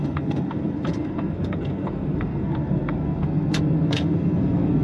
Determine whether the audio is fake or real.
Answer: fake